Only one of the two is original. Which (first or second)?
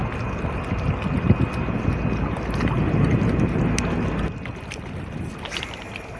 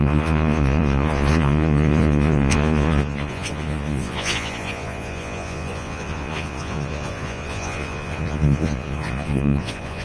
first